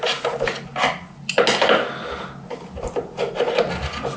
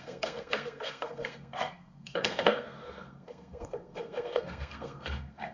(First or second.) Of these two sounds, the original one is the first